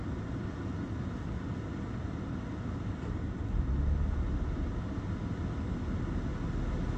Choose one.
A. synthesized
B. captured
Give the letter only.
B